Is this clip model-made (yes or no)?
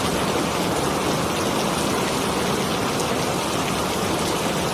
no